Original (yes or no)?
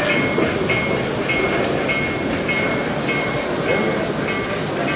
yes